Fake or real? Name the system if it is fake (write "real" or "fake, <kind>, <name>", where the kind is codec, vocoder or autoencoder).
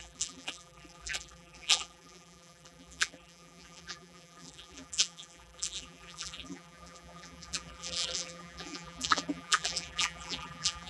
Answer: fake, vocoder, BigVGAN v2